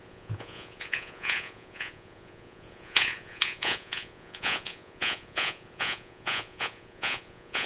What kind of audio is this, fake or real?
fake